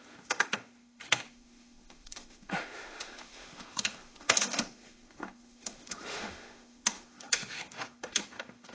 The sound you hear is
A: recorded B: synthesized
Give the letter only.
B